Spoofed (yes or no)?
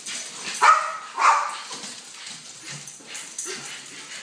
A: no